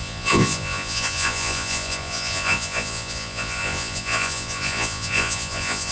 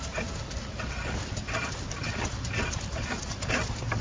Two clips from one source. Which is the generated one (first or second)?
first